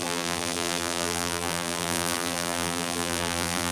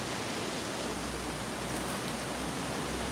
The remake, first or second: first